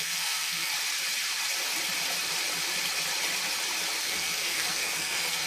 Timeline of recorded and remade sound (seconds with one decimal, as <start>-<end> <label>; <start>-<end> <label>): 0.0-0.7 remade; 0.7-4.0 recorded; 4.0-5.5 remade